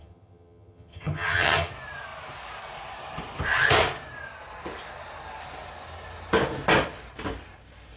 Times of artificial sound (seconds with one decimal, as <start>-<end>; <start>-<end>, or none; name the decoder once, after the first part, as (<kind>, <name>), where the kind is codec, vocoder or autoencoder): 0.0-1.7 (vocoder, HiFi-GAN)